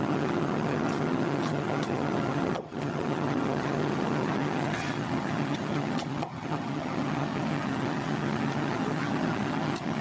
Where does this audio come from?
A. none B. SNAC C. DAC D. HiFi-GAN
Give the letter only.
D